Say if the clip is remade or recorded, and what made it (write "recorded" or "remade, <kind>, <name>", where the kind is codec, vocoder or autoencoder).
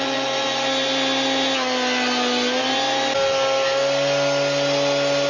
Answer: recorded